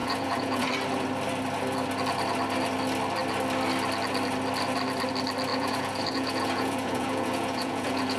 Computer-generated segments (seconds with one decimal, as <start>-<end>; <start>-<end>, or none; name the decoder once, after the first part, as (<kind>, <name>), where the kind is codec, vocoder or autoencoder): 0.0-0.7 (vocoder, Vocos); 5.5-8.2